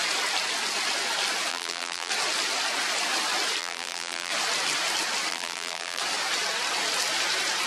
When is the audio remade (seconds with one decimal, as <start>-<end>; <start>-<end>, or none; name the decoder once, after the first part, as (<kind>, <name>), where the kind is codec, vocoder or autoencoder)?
1.5-2.1 (vocoder, BigVGAN v2); 3.6-4.3; 5.3-6.0